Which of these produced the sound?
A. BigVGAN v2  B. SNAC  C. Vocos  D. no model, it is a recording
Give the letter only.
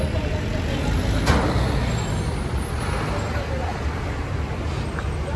D